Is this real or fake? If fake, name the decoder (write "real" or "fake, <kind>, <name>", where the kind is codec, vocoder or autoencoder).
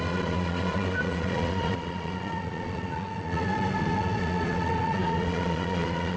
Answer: fake, vocoder, Vocos